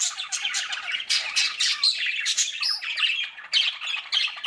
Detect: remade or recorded recorded